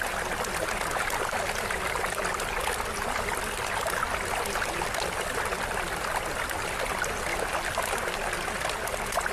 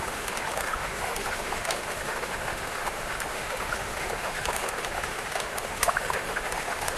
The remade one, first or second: second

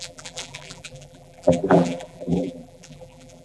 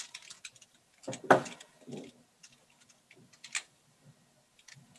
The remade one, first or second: first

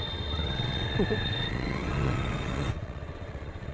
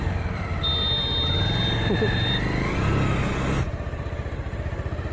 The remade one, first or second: first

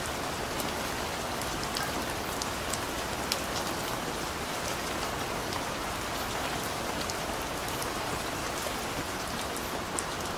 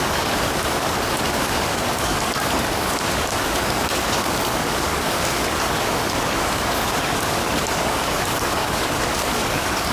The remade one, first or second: second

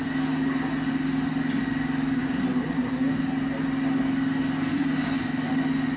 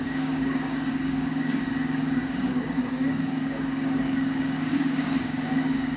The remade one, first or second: second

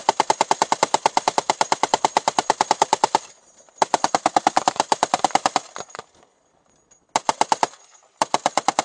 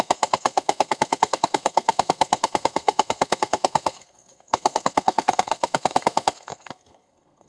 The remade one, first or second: second